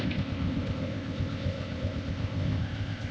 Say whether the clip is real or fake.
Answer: fake